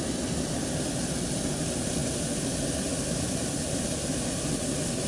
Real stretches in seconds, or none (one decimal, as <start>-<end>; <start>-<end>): 0.0-5.1